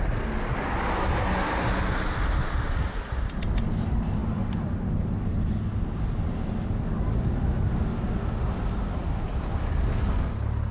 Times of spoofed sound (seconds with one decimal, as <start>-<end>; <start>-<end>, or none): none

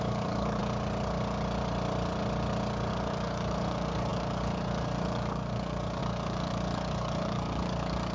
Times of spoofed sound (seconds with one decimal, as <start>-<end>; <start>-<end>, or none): 0.0-0.6; 2.9-8.1

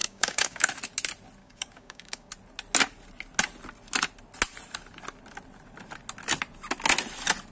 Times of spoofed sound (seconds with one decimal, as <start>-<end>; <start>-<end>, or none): 0.0-0.7; 1.4-2.3